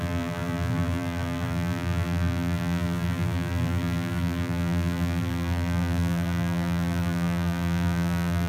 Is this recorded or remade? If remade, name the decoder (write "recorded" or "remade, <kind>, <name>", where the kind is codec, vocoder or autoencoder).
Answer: remade, vocoder, BigVGAN v2